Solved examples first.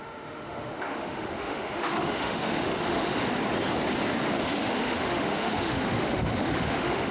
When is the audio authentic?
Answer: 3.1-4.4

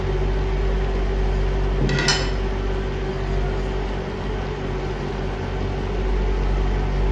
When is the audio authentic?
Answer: 0.0-7.1

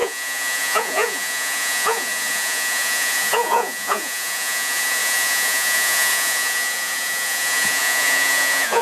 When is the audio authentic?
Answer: none

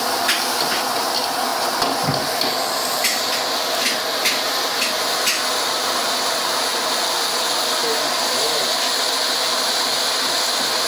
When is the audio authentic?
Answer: 0.0-10.9